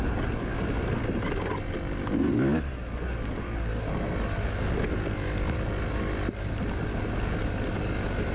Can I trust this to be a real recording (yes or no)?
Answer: yes